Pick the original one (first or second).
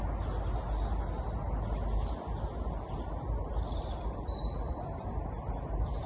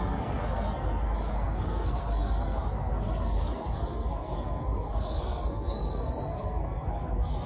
first